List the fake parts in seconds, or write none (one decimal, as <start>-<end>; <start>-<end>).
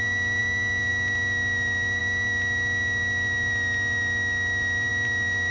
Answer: none